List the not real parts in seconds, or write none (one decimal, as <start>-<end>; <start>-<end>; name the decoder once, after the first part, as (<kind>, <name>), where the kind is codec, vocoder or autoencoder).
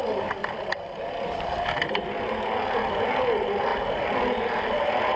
0.4-1.6 (vocoder, BigVGAN v2); 3.7-4.4